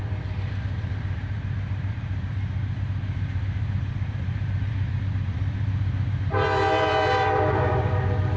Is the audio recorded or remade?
remade